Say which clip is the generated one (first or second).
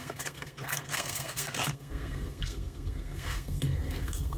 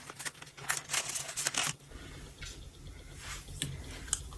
first